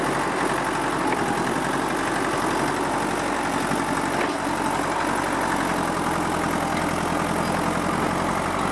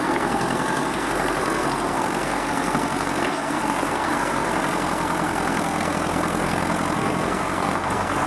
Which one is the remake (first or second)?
second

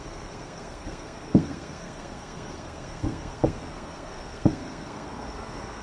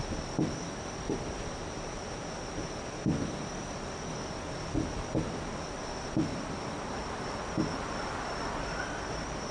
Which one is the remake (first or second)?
first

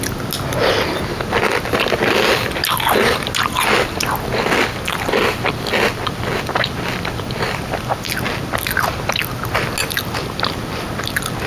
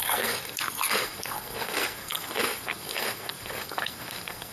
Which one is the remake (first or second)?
second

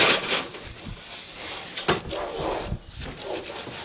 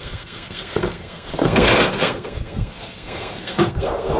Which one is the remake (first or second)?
second